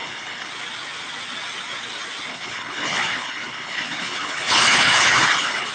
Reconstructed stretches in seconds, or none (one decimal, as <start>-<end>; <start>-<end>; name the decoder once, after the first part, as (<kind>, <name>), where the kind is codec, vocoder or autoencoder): 0.0-0.5 (codec, HILCodec); 2.3-5.7